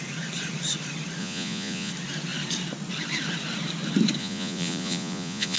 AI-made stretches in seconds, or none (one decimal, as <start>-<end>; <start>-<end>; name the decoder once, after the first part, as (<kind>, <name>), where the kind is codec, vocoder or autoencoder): 1.2-1.9 (vocoder, Vocos); 4.2-5.6